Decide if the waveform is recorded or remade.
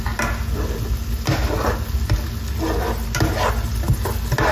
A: recorded